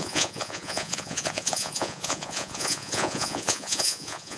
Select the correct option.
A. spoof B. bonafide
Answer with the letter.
A